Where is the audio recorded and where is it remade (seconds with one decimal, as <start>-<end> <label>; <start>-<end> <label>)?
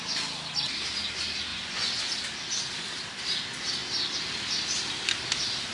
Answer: 0.0-1.5 recorded; 1.5-2.0 remade; 2.0-5.7 recorded